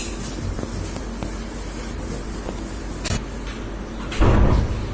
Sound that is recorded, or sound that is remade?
recorded